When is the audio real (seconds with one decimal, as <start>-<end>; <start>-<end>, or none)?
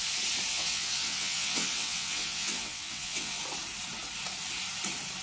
0.0-0.5; 3.4-5.2